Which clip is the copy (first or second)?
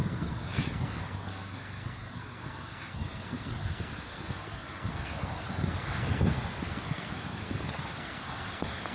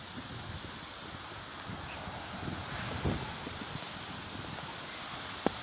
first